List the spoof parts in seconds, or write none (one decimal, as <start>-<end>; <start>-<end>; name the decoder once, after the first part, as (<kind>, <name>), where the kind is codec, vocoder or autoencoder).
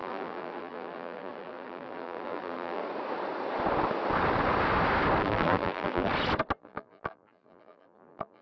0.0-2.8 (vocoder, BigVGAN v2); 5.2-6.1; 6.6-8.4